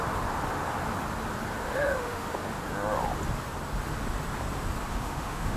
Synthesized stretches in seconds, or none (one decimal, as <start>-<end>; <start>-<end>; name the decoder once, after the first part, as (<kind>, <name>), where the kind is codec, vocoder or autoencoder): 1.6-2.4 (autoencoder, DAC-VAE); 4.9-5.6